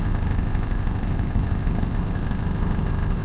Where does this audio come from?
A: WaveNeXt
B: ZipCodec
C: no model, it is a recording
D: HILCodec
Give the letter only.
B